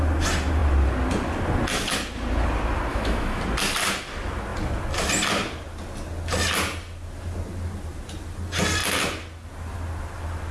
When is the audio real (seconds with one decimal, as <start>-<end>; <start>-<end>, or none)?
0.0-2.9; 3.4-10.5